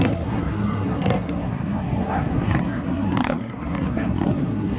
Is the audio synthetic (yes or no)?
yes